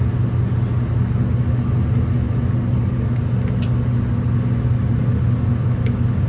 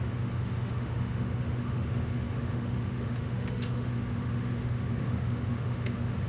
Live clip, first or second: first